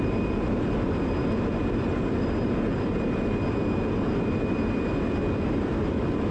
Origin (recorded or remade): remade